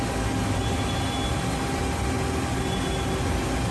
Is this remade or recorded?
recorded